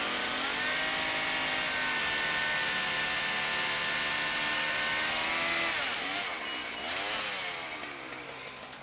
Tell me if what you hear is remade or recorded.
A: recorded